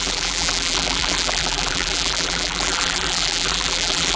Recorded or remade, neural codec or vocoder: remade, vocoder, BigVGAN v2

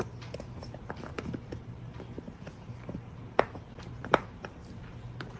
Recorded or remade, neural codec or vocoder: remade, vocoder, BigVGAN v2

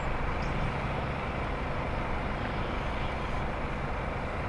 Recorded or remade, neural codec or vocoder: recorded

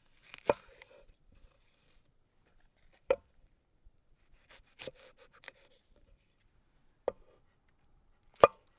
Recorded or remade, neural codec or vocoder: remade, vocoder, BigVGAN v2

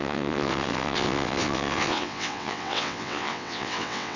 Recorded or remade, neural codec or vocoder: remade, vocoder, WaveNeXt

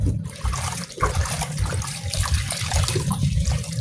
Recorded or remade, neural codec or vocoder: recorded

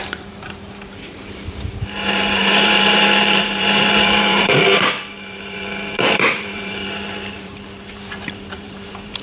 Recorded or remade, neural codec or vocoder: remade, vocoder, BigVGAN v2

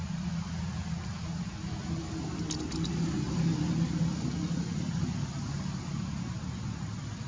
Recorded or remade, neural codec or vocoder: recorded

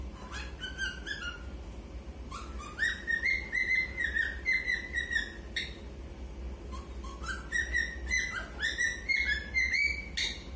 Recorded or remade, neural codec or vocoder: recorded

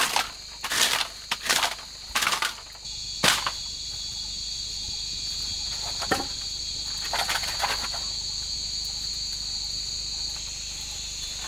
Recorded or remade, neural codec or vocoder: recorded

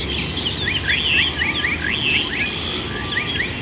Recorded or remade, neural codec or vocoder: recorded